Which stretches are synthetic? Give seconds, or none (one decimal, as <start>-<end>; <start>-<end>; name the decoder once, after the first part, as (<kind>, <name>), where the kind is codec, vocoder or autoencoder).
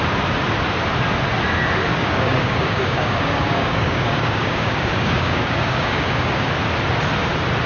1.9-6.5 (codec, DAC)